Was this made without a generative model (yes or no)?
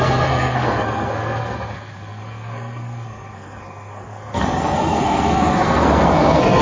no